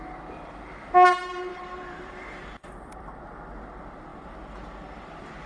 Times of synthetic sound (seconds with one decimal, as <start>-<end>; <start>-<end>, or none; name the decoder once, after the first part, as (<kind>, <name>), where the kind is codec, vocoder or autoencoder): 1.5-3.2 (vocoder, BigVGAN v2); 4.1-5.1